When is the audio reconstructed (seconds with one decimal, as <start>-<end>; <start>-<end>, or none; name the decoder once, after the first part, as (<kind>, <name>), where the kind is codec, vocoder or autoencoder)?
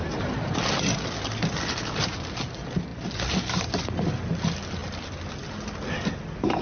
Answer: none